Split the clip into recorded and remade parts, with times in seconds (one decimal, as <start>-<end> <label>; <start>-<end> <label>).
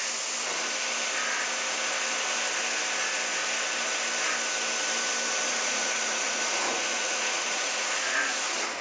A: 0.0-5.5 recorded; 5.5-8.3 remade; 8.3-8.8 recorded